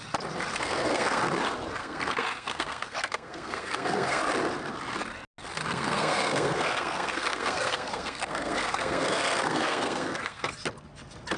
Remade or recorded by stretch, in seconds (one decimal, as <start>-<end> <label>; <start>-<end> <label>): 0.0-0.5 recorded; 0.5-1.2 remade; 1.2-1.8 recorded; 1.8-4.2 remade; 4.2-5.6 recorded; 5.6-10.5 remade; 10.5-11.4 recorded